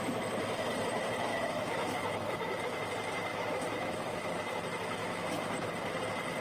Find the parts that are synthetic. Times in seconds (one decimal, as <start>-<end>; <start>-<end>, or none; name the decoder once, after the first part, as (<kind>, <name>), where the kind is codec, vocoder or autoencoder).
1.3-2.6 (autoencoder, DAC-VAE); 3.3-4.3; 5.0-5.7